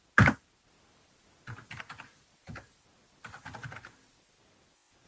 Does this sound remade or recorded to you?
recorded